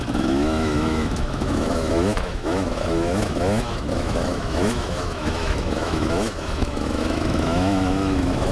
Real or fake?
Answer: fake